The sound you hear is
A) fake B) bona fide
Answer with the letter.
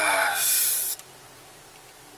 B